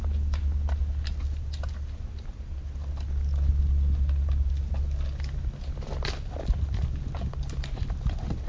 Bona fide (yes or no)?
yes